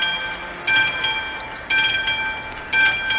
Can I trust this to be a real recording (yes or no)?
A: yes